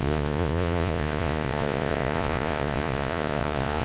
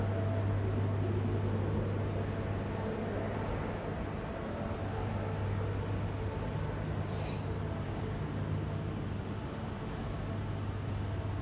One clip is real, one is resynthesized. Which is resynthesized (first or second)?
first